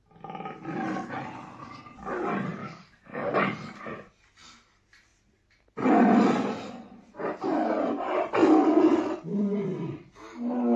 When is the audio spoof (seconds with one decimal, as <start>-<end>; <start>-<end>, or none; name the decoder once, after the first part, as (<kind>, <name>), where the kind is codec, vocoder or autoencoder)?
2.6-3.3 (codec, DAC)